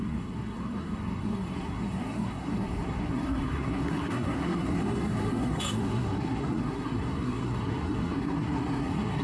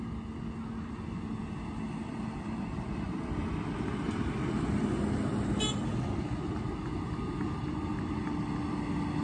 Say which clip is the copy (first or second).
first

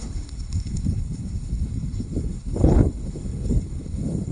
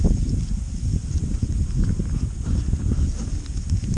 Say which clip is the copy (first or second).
first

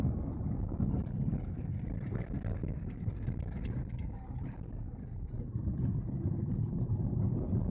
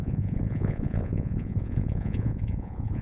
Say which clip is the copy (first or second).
second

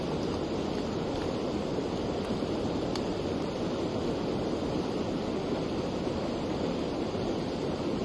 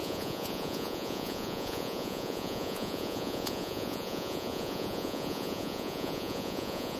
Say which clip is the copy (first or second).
second